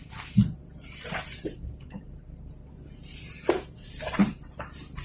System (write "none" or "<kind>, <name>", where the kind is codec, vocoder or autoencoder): none